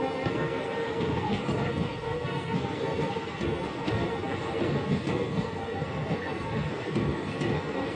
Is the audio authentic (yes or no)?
no